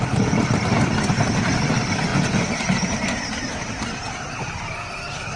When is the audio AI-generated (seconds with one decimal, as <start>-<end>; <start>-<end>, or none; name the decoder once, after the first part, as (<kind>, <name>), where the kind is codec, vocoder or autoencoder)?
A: none